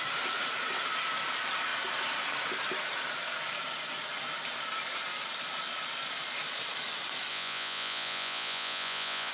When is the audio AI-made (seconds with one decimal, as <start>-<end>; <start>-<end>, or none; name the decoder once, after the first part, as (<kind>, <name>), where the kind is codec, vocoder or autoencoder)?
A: 7.3-9.3 (vocoder, Vocos)